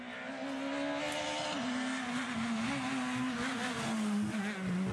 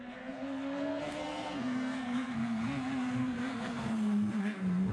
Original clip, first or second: first